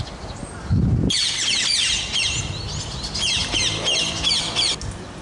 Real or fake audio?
real